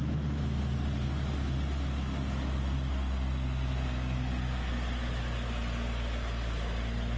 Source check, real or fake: real